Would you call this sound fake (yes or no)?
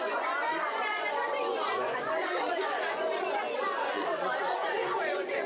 yes